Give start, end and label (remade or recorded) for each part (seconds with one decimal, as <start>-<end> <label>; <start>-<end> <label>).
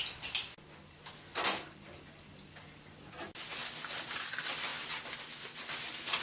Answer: 0.0-6.2 recorded